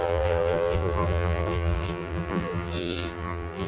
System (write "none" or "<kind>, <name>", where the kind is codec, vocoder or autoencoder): vocoder, BigVGAN v2